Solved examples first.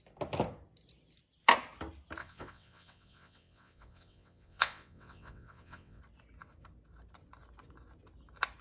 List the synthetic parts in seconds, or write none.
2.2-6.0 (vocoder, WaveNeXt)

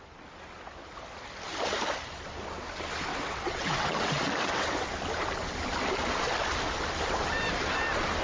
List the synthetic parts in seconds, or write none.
3.1-4.9 (vocoder, WaveNeXt)

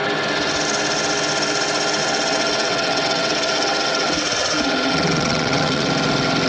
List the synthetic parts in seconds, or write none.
2.0-5.9 (vocoder, WaveNeXt)

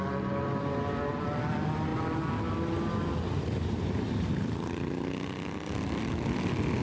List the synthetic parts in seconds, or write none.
none

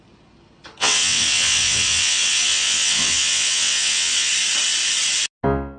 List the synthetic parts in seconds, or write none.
0.8-4.3 (vocoder, WaveNeXt)

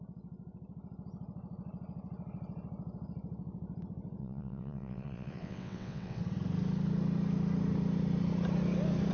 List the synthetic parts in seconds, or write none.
4.2-6.2 (vocoder, WaveNeXt)

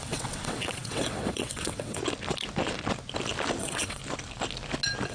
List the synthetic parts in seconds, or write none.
0.0-2.0 (vocoder, WaveNeXt); 3.6-4.0